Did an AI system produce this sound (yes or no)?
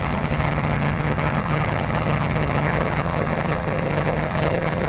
yes